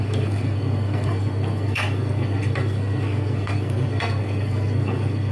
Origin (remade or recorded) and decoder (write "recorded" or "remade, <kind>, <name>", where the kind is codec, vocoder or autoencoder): remade, codec, SNAC